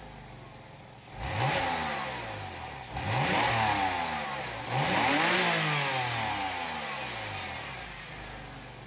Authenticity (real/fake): real